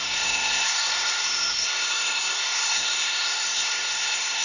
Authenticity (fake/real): fake